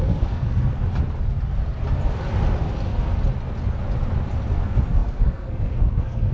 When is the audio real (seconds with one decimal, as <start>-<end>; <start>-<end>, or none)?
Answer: 0.8-4.5